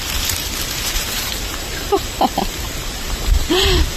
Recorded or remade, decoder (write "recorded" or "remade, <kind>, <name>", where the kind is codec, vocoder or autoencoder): remade, vocoder, BigVGAN v2